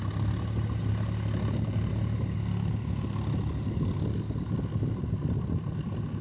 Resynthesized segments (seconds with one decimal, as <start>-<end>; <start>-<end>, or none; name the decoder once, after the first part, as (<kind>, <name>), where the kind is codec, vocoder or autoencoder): none